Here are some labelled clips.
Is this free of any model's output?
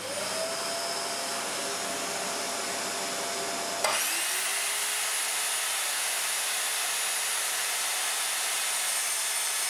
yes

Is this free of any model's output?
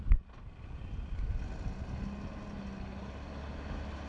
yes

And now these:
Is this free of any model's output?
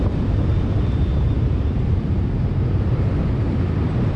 no